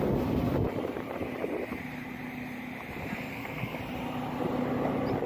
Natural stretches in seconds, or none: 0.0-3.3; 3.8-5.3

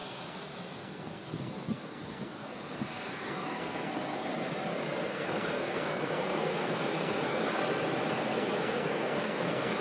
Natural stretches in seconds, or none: 4.3-5.1; 7.6-8.1

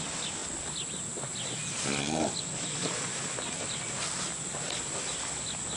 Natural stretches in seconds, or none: 0.0-5.8

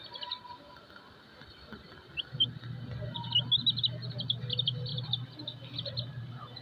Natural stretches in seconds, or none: 0.0-6.6

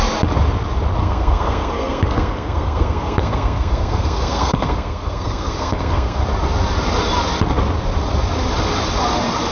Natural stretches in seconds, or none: 0.0-1.0; 6.2-9.5

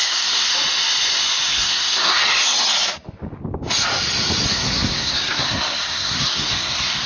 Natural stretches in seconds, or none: 0.5-1.5; 2.2-4.5

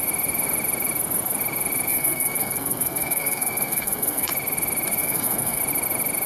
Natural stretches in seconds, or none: 0.0-1.9; 4.3-5.0; 5.6-6.3